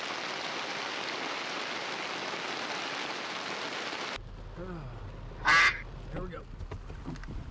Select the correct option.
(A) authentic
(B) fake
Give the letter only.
A